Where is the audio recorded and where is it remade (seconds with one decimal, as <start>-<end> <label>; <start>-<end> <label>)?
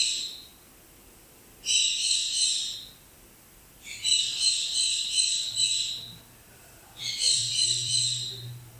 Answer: 0.0-0.5 remade; 0.5-4.2 recorded; 4.2-5.7 remade; 5.7-6.5 recorded; 6.5-8.0 remade; 8.0-8.8 recorded